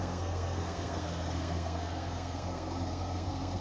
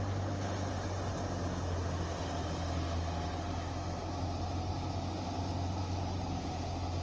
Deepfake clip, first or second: first